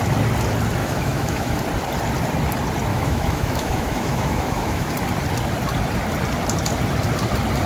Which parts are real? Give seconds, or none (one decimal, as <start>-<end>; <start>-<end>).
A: 0.0-0.8; 1.6-2.9; 4.9-7.7

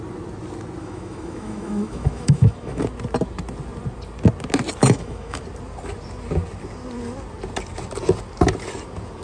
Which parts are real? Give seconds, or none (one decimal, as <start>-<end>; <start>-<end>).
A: 0.0-0.8; 2.8-4.8; 5.4-9.2

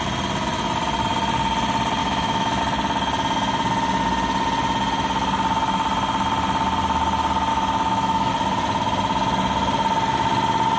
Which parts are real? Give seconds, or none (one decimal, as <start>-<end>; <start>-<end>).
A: 0.0-2.0; 2.6-7.5; 8.3-10.8

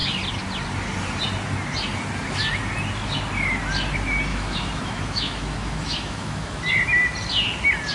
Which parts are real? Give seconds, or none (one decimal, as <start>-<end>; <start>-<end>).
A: 0.0-4.3; 6.6-7.9

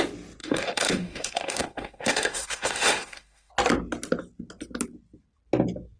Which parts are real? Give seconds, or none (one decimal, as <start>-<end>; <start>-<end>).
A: 0.0-0.4; 3.5-6.0

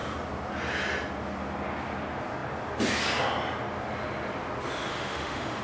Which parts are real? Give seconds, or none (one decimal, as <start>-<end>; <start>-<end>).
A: 0.0-4.9

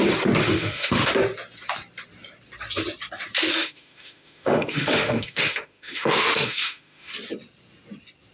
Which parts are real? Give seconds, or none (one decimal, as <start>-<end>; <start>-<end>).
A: 0.0-0.4; 1.1-3.5; 7.1-8.3

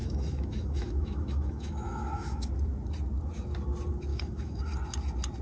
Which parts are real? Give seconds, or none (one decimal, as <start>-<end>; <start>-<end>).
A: 2.5-4.1; 4.6-5.4